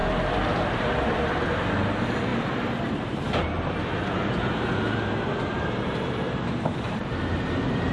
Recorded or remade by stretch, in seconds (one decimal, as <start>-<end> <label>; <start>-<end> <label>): 0.0-0.6 recorded; 0.6-1.2 remade; 1.2-1.7 recorded; 1.7-2.3 remade; 2.3-3.1 recorded; 3.1-7.9 remade